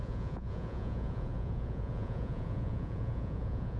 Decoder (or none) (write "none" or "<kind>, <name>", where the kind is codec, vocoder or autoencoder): vocoder, Vocos